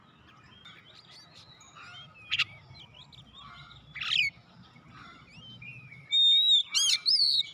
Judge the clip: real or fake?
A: real